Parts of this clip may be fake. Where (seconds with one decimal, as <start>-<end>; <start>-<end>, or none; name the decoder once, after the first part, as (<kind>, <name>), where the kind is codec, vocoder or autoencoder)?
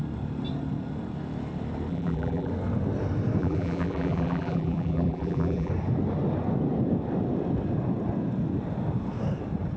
1.9-2.5 (vocoder, BigVGAN v2); 3.4-5.7